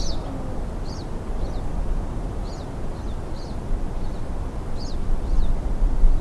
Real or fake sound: real